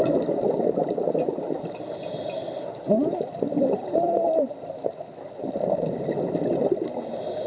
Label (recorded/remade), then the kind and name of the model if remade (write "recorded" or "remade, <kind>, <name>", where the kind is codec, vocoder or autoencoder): recorded